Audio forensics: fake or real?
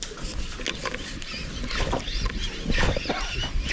real